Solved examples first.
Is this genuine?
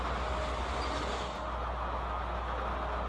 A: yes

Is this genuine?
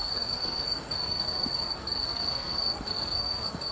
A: no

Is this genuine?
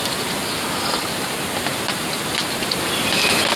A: yes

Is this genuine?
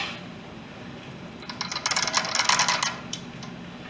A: yes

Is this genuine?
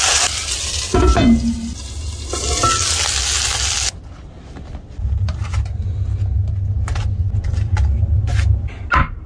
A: yes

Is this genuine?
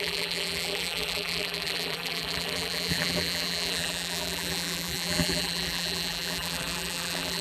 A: no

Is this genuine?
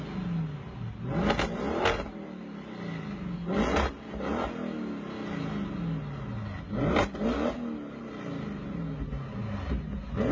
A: yes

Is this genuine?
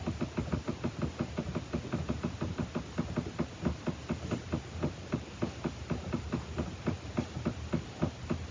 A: yes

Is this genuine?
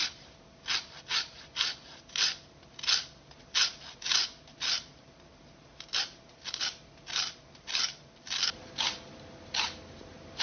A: yes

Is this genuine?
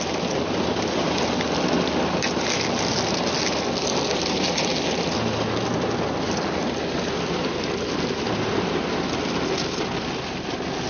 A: yes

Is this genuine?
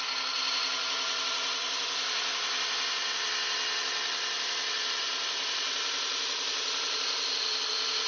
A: yes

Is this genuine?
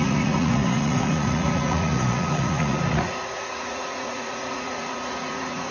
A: no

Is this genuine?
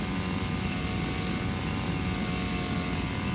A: yes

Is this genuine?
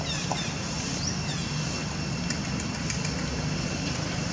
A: yes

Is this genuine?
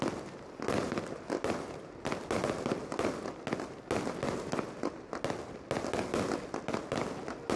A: yes